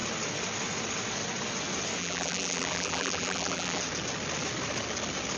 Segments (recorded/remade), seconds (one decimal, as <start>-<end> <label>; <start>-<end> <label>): 0.0-2.0 recorded; 2.0-3.8 remade; 3.8-5.4 recorded